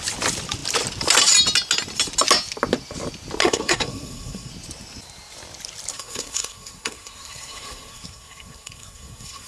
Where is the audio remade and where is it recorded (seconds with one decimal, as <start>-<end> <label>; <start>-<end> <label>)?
0.0-3.4 recorded; 3.4-4.5 remade; 4.5-5.9 recorded; 5.9-9.5 remade